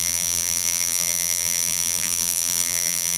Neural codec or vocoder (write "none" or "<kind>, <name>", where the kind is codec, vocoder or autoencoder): vocoder, BigVGAN v2